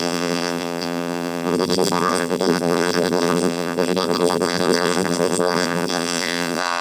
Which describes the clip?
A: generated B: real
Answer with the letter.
A